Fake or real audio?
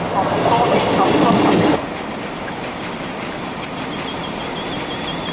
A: real